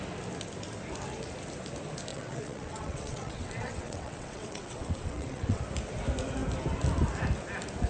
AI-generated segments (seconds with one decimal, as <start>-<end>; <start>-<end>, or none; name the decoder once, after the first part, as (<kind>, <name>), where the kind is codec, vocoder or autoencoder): 2.1-5.6 (vocoder, WaveNeXt)